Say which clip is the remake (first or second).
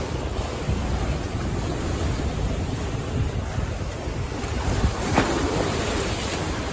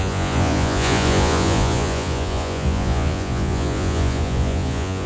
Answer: second